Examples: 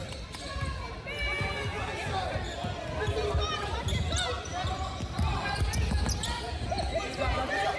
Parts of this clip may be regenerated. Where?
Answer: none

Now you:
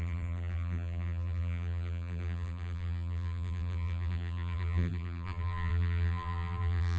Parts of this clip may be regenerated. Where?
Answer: 0.0-7.0 (vocoder, BigVGAN v2)

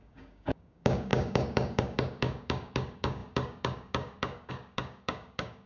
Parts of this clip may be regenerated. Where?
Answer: 0.0-5.7 (codec, DAC)

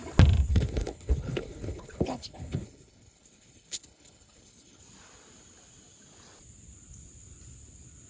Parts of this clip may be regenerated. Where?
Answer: 0.5-4.8 (codec, HILCodec)

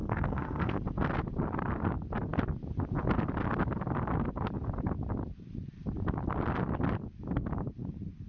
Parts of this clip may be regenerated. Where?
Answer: 0.0-0.8 (codec, SNAC)

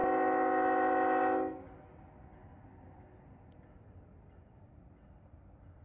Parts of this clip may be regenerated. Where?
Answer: none